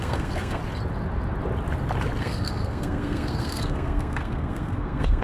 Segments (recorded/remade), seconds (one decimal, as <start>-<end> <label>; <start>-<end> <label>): 0.0-0.6 remade; 0.6-2.2 recorded; 2.2-5.2 remade